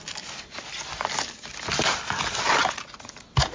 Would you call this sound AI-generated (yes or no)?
no